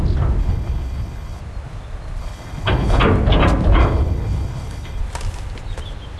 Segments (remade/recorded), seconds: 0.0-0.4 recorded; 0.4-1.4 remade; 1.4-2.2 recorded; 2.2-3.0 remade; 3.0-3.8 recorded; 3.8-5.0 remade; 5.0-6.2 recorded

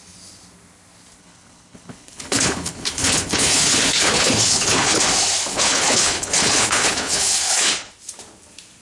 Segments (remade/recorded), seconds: 0.0-1.2 recorded; 1.2-5.0 remade; 5.0-5.5 recorded; 5.5-7.9 remade; 7.9-8.8 recorded